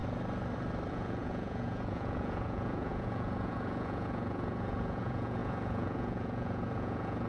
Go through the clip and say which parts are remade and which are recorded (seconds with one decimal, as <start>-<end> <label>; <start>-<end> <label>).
0.0-0.9 recorded; 0.9-7.3 remade